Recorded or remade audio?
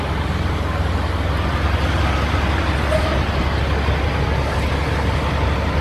recorded